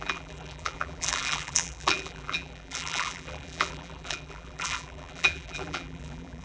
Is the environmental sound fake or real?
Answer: fake